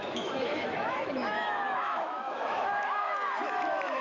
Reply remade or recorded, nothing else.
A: remade